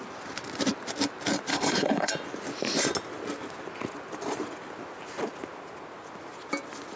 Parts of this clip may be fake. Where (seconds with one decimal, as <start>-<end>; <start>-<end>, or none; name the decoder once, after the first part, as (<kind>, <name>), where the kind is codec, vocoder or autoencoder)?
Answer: 1.5-2.1 (codec, HILCodec)